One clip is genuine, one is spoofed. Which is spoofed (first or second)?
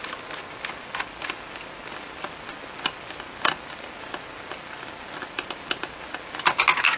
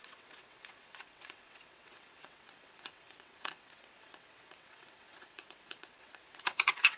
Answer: second